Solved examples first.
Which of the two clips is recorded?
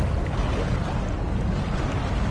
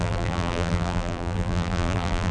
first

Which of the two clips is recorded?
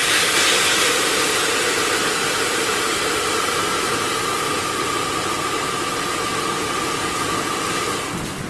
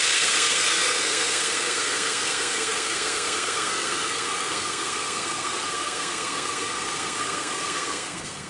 first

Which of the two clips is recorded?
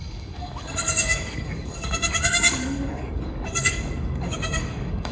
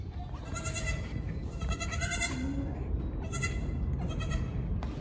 second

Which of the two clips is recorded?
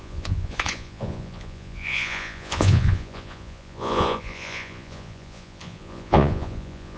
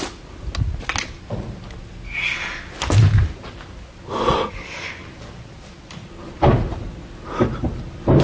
second